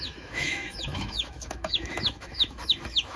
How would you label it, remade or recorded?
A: remade